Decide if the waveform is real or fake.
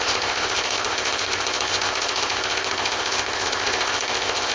fake